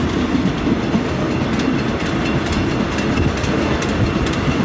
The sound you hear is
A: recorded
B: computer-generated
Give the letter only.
A